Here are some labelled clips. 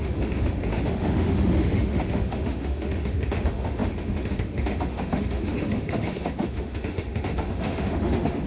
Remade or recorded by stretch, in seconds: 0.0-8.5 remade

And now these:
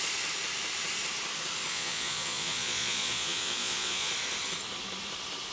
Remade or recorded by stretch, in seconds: 0.0-1.7 recorded; 1.7-4.1 remade; 4.1-5.5 recorded

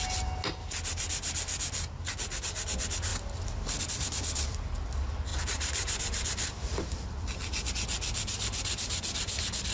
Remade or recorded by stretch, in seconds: 0.0-5.3 recorded; 5.3-7.7 remade; 7.7-9.7 recorded

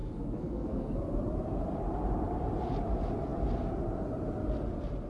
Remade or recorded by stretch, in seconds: 0.0-1.0 remade; 1.0-5.1 recorded